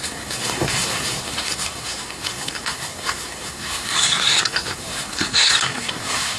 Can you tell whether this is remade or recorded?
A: remade